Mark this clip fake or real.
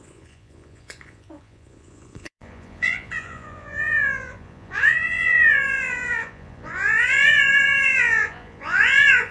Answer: fake